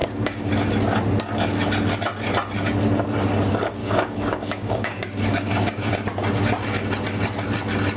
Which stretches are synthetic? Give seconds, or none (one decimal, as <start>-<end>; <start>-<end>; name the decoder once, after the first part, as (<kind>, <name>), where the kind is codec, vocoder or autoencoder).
0.0-0.5 (codec, DAC); 3.8-5.9